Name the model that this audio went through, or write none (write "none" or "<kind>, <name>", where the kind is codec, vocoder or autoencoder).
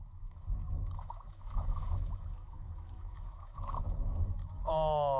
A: autoencoder, DAC-VAE